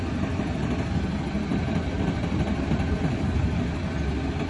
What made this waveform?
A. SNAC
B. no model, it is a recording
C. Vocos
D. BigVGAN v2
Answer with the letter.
B